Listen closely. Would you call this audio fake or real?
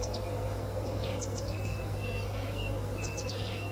fake